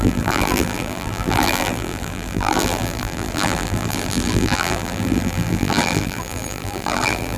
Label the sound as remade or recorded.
remade